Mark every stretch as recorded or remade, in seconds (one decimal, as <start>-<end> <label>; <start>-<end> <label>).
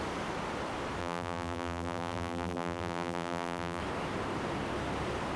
0.0-1.0 recorded; 1.0-3.8 remade; 3.8-5.4 recorded